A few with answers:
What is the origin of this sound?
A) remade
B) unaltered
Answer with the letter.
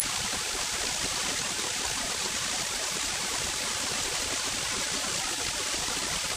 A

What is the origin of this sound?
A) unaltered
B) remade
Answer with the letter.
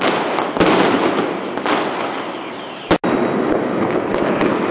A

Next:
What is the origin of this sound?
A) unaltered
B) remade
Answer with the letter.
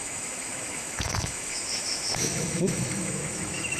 B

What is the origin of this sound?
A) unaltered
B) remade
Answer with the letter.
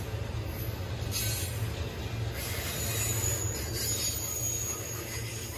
A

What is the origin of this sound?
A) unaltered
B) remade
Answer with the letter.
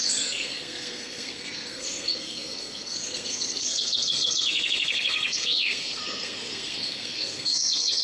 B